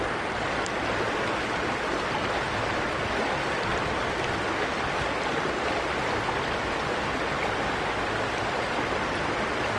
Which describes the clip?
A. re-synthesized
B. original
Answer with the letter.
B